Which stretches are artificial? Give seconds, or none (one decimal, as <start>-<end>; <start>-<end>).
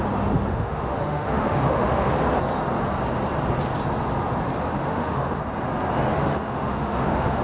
0.5-2.1; 4.8-5.4; 6.1-7.4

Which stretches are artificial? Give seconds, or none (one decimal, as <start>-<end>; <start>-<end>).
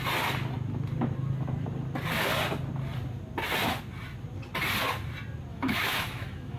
5.5-6.6